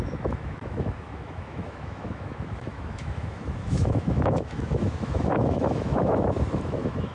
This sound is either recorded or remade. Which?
remade